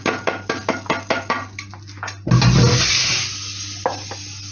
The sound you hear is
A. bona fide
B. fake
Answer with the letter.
A